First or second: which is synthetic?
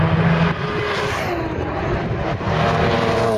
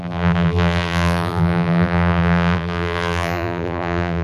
second